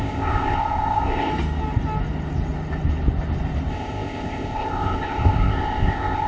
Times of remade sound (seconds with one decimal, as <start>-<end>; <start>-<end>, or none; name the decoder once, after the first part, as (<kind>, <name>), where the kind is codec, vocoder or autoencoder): 0.0-1.3 (codec, ZipCodec); 3.7-6.3